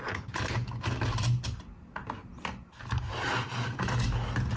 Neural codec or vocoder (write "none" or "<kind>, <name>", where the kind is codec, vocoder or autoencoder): none